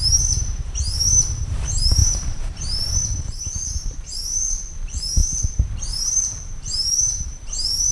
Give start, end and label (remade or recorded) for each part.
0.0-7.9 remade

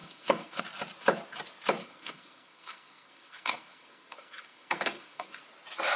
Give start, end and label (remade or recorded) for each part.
0.0-0.6 remade; 0.6-1.8 recorded; 1.8-5.4 remade; 5.4-6.0 recorded